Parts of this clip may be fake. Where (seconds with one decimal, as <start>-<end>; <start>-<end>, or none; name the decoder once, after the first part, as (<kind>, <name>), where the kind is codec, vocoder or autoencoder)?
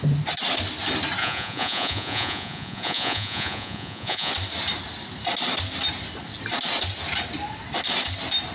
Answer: 1.2-4.3 (vocoder, Vocos)